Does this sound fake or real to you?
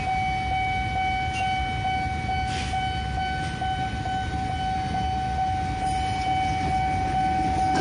real